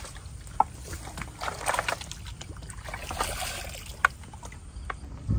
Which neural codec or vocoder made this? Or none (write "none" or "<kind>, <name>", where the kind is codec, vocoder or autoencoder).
none